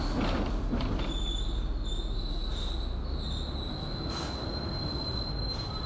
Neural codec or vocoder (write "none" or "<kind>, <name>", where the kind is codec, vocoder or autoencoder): none